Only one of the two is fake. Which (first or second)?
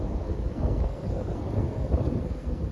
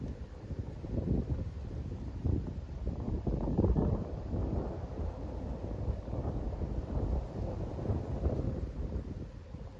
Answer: first